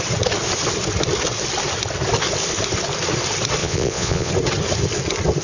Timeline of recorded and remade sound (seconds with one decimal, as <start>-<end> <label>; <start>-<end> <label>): 0.0-3.6 recorded; 3.6-4.3 remade; 4.3-5.4 recorded